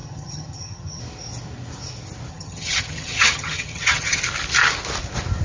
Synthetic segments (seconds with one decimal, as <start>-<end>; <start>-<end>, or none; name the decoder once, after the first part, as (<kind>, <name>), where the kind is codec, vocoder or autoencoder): 0.0-1.0 (vocoder, HiFi-GAN); 2.3-4.2